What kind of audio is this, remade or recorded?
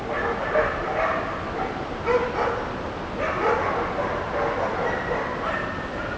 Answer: recorded